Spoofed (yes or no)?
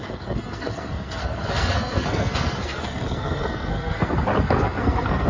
yes